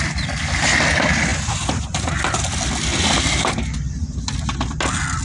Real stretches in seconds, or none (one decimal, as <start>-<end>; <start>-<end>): 0.0-5.2